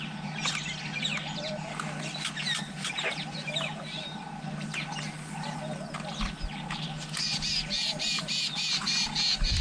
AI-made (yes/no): no